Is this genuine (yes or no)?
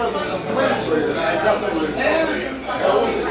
yes